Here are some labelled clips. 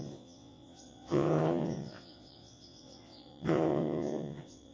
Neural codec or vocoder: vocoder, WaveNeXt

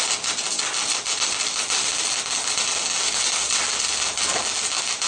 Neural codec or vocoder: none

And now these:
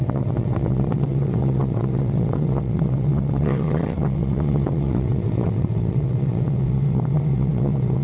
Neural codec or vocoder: vocoder, WaveNeXt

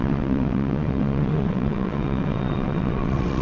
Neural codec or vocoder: vocoder, WaveNeXt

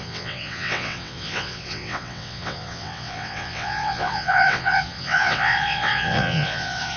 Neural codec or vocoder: vocoder, WaveNeXt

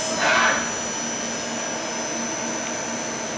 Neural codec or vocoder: none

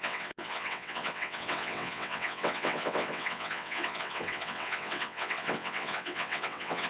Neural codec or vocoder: vocoder, WaveNeXt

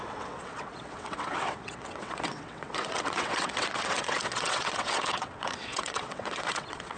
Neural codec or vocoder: vocoder, WaveNeXt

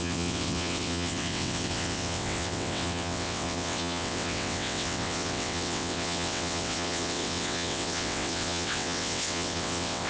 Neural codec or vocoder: vocoder, WaveNeXt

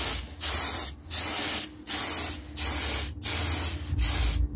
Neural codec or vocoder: none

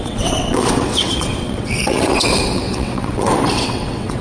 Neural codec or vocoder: vocoder, WaveNeXt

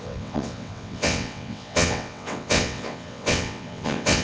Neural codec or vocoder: vocoder, WaveNeXt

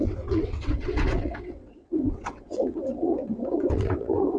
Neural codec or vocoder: vocoder, WaveNeXt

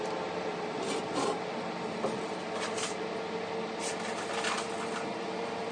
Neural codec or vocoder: none